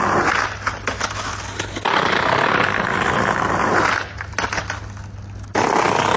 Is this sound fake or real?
real